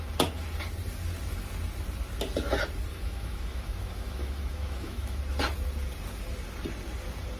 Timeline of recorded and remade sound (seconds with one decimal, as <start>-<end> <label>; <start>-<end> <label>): 0.0-2.9 recorded; 2.9-5.2 remade; 5.2-7.4 recorded